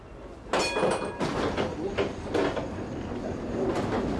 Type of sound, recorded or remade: recorded